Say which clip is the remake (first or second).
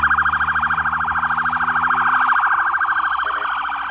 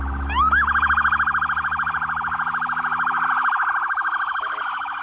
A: second